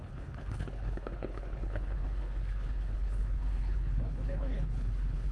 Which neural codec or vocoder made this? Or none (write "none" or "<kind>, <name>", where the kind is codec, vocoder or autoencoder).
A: codec, HILCodec